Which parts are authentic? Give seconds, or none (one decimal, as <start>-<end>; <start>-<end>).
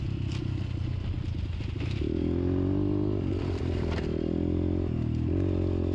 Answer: 0.0-5.9